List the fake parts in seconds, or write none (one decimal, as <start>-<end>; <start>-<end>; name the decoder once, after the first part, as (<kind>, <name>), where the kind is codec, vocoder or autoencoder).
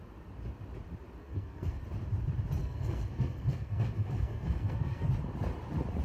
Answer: 1.2-1.8 (codec, SNAC); 2.6-5.1